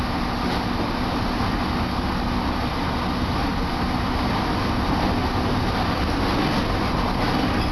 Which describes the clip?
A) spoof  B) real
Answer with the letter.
B